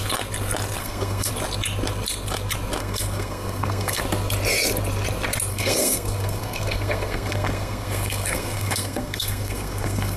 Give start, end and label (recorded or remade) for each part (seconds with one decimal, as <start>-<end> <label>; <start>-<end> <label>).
0.0-0.8 recorded; 0.8-1.3 remade; 1.3-2.8 recorded; 2.8-4.0 remade; 4.0-5.5 recorded; 5.5-10.2 remade